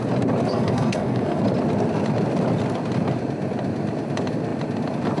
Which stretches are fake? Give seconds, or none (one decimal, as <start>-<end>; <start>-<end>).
0.5-1.4